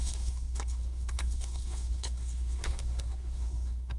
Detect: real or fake fake